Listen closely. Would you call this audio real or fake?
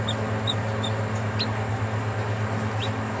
real